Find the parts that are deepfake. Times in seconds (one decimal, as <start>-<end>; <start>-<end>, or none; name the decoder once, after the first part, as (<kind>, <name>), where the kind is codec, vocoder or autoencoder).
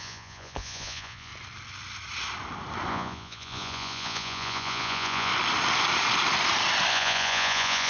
0.0-1.3 (vocoder, Vocos); 2.9-5.3; 6.9-7.9